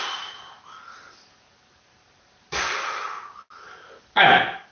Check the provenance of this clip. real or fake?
real